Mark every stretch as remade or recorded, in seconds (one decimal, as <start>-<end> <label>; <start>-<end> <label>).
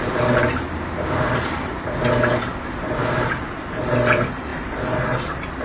0.0-1.7 remade; 1.7-2.5 recorded; 2.5-5.6 remade